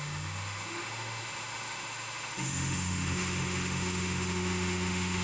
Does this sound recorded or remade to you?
remade